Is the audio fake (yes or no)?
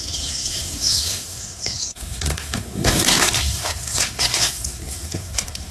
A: yes